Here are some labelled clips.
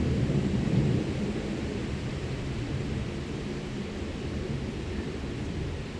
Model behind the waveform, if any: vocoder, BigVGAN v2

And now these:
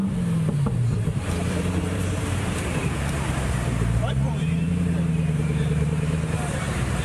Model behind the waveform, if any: vocoder, BigVGAN v2